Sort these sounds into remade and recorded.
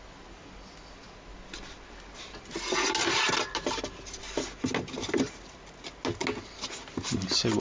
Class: recorded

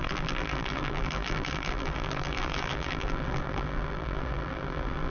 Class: remade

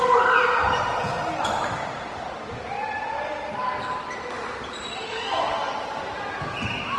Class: recorded